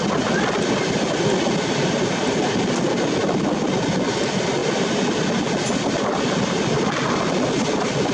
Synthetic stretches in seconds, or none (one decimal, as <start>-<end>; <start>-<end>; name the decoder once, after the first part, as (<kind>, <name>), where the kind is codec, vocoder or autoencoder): none